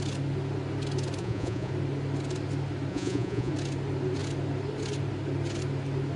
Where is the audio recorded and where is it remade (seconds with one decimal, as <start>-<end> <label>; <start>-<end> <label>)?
0.0-1.2 recorded; 1.2-1.7 remade; 1.7-2.9 recorded; 2.9-3.5 remade; 3.5-6.2 recorded